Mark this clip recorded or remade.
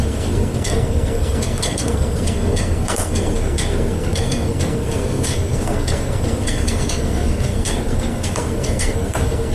remade